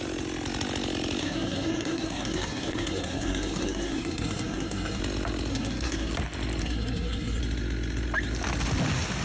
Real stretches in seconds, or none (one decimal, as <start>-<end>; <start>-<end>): 0.0-1.2; 5.0-5.5; 6.1-6.6; 7.4-9.2